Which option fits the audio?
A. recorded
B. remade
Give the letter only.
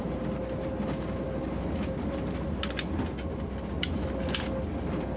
A